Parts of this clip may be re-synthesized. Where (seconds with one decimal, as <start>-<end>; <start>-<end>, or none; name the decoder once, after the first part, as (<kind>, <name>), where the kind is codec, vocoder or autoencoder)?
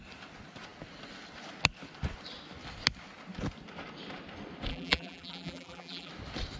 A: 4.7-6.1 (vocoder, BigVGAN v2)